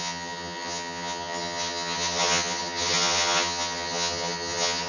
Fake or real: fake